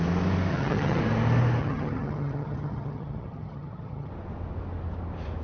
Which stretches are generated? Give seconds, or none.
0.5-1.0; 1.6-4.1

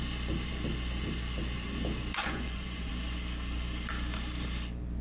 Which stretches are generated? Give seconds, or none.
2.2-2.9

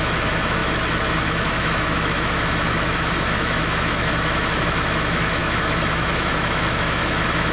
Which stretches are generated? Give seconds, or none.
0.0-7.5

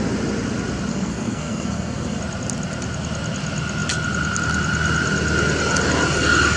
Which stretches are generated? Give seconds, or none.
0.9-2.2